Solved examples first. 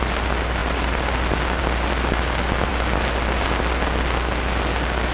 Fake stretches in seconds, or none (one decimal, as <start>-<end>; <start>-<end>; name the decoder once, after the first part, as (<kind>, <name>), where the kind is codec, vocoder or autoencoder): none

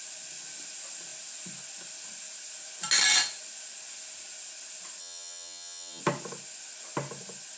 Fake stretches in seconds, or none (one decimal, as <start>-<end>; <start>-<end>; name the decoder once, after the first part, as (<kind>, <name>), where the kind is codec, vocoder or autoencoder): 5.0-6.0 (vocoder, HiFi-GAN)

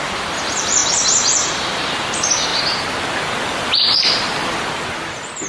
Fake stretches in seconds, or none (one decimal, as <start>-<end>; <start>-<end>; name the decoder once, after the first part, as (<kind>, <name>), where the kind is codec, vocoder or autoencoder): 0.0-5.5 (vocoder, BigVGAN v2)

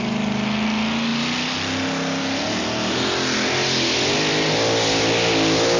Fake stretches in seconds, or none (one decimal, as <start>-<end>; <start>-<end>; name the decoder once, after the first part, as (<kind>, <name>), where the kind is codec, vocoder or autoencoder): none

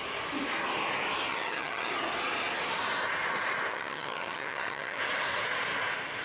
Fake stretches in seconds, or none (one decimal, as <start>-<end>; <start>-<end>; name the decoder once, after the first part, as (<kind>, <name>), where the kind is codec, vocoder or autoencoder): 1.3-1.9 (vocoder, HiFi-GAN); 3.7-5.0

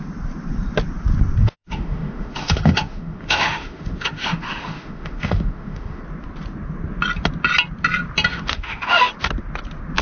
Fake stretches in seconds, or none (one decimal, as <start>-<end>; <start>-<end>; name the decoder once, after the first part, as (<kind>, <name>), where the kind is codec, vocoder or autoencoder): 1.4-6.0 (autoencoder, DAC-VAE); 8.3-9.1